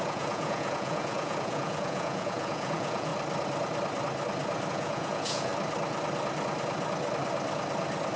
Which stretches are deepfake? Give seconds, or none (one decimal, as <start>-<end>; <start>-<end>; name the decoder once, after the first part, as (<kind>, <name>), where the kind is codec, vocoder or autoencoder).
0.0-3.1 (vocoder, Vocos); 4.7-5.5